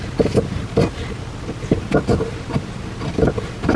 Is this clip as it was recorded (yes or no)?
yes